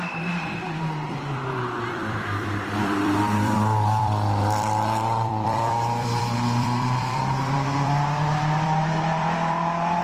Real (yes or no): no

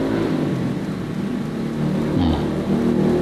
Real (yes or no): yes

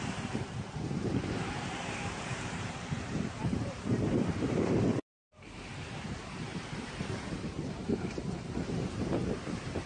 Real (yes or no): no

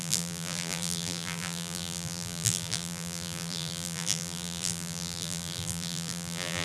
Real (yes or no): no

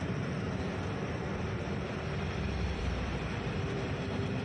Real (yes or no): no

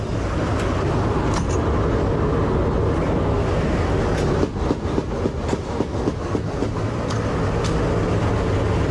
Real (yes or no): yes